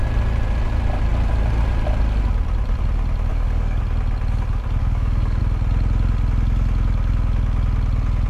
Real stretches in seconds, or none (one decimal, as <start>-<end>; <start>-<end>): 0.0-3.3; 3.8-4.8; 5.4-8.3